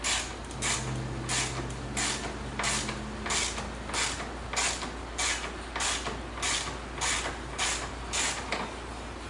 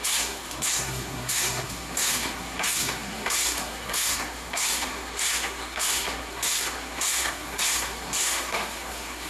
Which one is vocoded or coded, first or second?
second